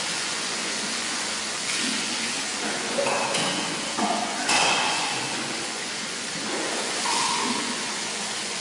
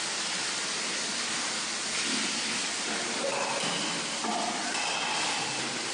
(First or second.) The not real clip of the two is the first